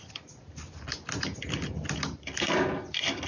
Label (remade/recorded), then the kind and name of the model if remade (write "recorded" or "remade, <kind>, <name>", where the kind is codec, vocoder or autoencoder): recorded